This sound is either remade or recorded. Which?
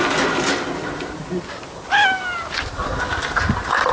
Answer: recorded